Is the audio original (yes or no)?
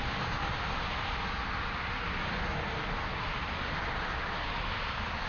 yes